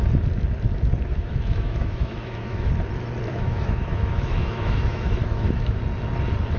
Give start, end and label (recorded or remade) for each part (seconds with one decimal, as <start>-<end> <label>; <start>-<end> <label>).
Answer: 0.0-1.1 recorded; 1.1-2.7 remade; 2.7-3.3 recorded; 3.3-5.8 remade; 5.8-6.6 recorded